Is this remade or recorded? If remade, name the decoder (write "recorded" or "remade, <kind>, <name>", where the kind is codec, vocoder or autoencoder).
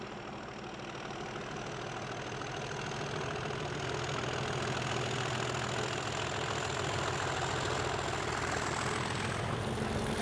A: recorded